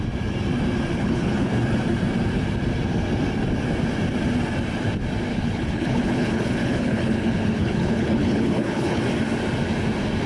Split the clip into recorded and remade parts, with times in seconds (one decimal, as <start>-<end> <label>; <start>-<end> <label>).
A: 0.0-0.9 recorded; 0.9-1.5 remade; 1.5-5.3 recorded; 5.3-9.0 remade; 9.0-10.3 recorded